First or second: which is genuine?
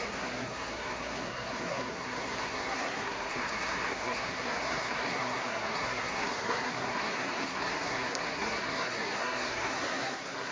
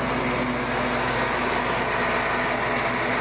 second